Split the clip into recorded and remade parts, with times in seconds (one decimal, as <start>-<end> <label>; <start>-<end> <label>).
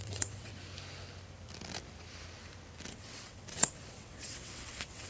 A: 0.0-0.5 remade; 0.5-2.9 recorded; 2.9-5.1 remade